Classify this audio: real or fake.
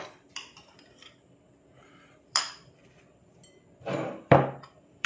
fake